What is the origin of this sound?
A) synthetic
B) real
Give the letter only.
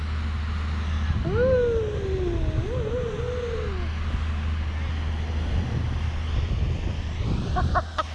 B